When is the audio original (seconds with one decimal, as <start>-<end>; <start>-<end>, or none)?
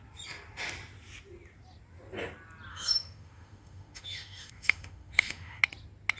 0.0-2.7; 5.6-6.2